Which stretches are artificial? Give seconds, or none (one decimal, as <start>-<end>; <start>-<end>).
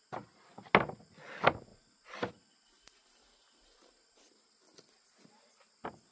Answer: none